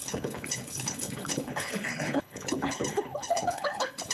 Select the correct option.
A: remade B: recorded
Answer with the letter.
A